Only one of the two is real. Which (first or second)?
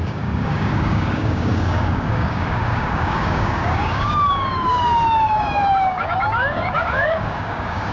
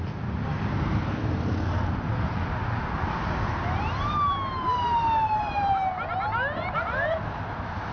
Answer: second